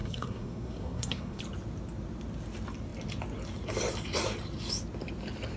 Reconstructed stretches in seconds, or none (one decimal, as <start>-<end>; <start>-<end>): 0.0-1.4